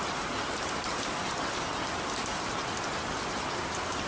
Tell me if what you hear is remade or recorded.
recorded